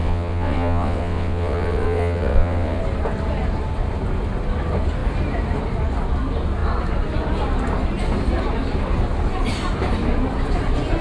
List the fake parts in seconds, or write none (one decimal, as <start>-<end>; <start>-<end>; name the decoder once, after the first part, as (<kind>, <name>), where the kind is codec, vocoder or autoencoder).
0.0-2.8 (vocoder, WaveNeXt)